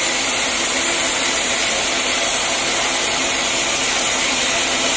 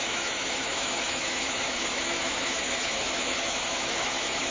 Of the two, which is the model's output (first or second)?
second